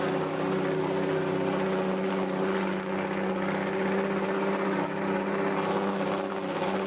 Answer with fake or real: real